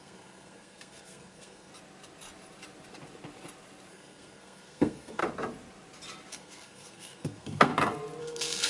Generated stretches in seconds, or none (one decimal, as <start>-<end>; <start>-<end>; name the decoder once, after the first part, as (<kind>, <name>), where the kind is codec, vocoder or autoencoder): 0.0-1.7 (codec, SNAC); 3.9-5.2; 6.3-7.7; 8.2-8.7